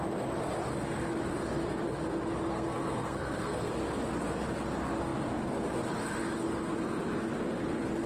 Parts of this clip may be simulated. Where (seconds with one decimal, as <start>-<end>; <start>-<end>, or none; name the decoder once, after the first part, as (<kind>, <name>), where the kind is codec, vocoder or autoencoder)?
2.5-3.7 (codec, SNAC)